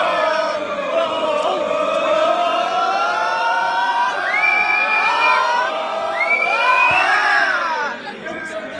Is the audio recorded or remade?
remade